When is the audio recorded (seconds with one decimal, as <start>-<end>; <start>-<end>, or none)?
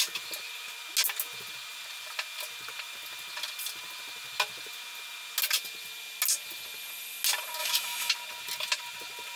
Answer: 0.0-7.6; 8.1-9.4